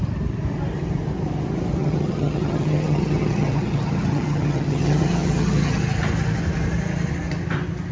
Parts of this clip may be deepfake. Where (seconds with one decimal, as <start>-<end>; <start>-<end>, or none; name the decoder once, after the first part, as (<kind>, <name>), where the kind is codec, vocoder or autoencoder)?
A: 1.8-5.8 (vocoder, HiFi-GAN)